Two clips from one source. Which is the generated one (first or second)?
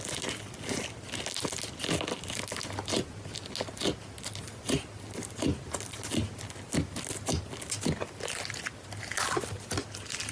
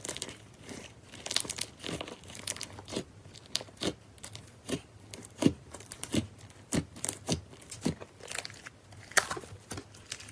second